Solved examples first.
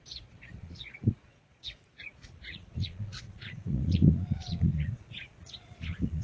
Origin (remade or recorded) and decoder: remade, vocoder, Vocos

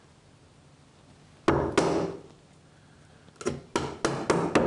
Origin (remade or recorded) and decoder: recorded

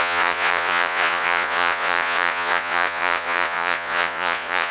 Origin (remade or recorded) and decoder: remade, vocoder, Vocos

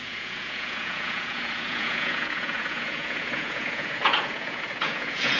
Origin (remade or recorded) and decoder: remade, vocoder, Vocos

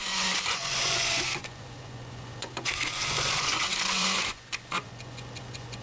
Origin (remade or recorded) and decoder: remade, vocoder, Vocos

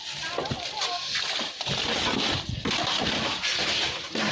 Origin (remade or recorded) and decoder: recorded